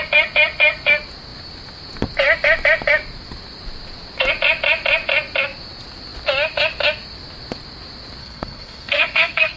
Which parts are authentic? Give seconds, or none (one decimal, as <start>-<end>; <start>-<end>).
0.0-8.2